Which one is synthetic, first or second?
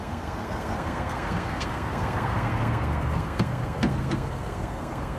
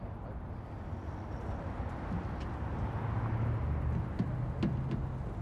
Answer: first